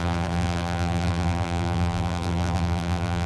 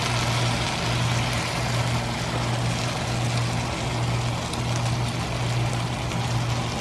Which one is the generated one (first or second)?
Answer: first